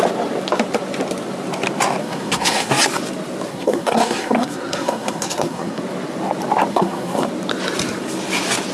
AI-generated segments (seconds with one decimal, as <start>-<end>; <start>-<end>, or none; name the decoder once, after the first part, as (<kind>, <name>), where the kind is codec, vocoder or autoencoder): 2.0-2.7 (codec, SNAC); 3.5-5.8; 6.7-7.3